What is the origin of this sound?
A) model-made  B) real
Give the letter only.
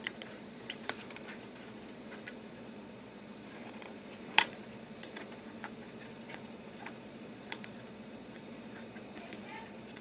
A